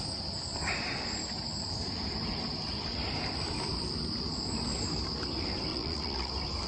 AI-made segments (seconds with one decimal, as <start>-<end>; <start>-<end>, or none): 5.7-6.3